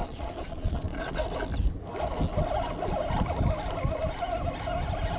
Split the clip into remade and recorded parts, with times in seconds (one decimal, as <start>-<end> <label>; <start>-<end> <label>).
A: 0.0-1.2 remade; 1.2-5.2 recorded